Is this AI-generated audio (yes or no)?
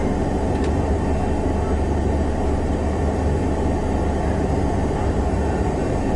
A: no